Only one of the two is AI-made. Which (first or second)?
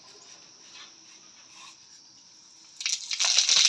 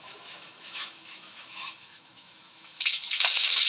second